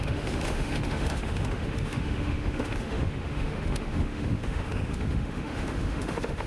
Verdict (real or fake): fake